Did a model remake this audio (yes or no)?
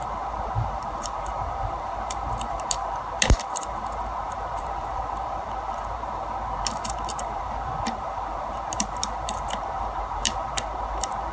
yes